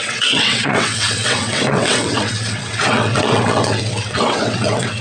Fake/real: fake